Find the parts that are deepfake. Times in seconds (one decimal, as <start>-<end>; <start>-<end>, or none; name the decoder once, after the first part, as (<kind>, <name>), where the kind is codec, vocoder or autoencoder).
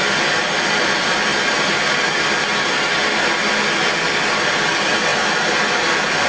0.0-1.3 (vocoder, BigVGAN v2); 4.3-5.1